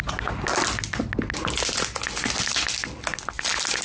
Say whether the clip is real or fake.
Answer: real